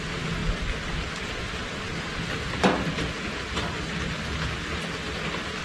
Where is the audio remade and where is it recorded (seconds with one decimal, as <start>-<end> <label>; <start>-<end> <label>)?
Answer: 0.0-5.6 recorded

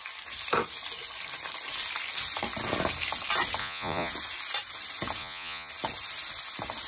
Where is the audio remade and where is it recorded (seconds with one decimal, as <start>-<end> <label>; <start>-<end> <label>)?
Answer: 0.0-3.6 recorded; 3.6-4.1 remade; 4.1-5.2 recorded; 5.2-5.7 remade; 5.7-6.9 recorded